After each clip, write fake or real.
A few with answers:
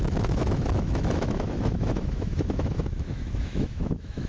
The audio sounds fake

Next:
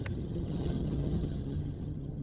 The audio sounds fake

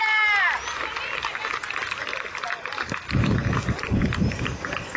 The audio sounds real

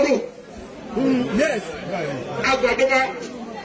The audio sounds real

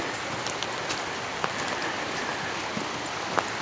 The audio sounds real